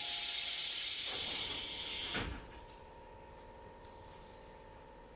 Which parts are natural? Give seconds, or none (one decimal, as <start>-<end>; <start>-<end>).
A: 0.0-0.6; 1.6-2.3; 3.1-3.8; 4.3-5.2